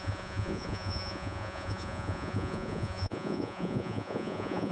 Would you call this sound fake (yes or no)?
yes